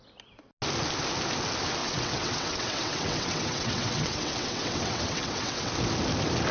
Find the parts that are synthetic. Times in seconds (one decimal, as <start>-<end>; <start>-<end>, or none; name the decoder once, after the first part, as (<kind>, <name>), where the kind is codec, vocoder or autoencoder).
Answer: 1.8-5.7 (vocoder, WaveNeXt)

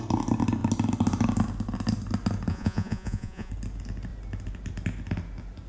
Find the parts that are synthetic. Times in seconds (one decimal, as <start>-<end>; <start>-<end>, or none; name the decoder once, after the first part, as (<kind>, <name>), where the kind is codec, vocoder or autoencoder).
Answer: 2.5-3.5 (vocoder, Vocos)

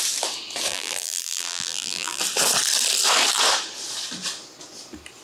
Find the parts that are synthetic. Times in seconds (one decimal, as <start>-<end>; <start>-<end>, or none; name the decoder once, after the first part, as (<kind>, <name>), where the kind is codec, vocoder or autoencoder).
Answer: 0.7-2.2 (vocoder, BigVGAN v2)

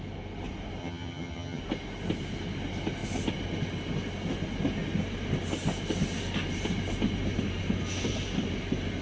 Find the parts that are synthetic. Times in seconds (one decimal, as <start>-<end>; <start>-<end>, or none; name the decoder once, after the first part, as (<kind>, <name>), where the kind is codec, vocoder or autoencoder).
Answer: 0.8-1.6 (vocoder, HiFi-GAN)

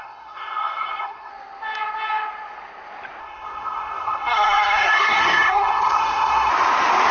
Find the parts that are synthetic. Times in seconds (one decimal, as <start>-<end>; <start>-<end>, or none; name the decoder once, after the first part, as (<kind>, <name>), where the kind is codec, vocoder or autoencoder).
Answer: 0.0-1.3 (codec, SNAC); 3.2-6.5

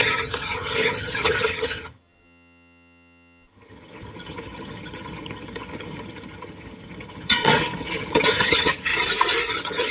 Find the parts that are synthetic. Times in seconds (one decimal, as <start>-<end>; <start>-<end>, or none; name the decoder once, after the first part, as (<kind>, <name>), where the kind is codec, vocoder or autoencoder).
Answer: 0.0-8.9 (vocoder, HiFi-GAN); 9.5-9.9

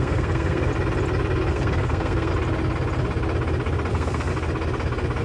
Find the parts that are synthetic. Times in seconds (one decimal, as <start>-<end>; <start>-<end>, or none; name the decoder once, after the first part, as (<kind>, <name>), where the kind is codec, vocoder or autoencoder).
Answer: 0.0-0.7 (codec, SNAC); 1.5-2.3; 3.9-4.3

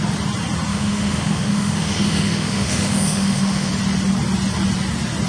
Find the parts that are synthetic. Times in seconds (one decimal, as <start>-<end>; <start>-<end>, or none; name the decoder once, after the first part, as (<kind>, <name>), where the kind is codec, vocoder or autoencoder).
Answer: 0.7-3.7 (autoencoder, DAC-VAE)